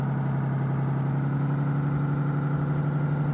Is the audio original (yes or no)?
yes